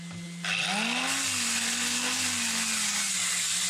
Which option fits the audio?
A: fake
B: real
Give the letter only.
B